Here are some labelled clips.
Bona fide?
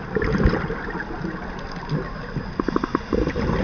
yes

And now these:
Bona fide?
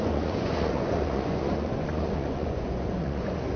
no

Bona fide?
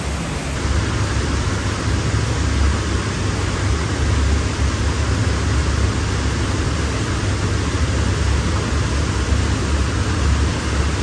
yes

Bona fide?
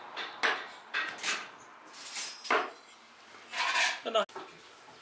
yes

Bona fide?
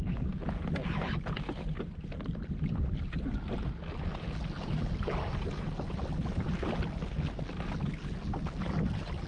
yes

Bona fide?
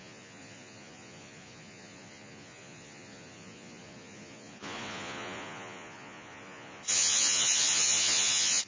no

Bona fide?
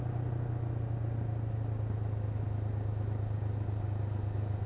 yes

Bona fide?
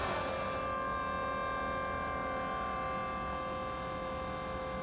yes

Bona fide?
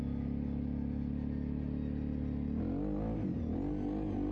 yes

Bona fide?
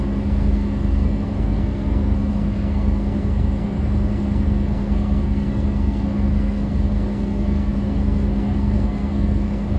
no